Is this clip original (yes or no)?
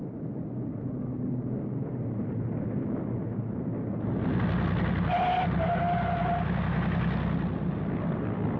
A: yes